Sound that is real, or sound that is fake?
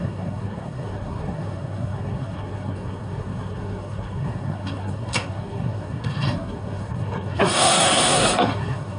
fake